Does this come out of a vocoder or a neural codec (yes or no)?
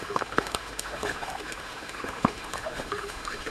yes